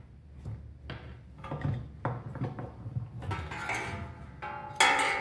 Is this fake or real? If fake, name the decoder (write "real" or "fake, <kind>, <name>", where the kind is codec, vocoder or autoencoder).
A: real